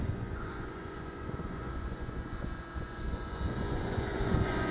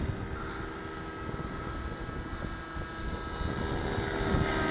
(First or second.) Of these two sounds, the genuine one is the second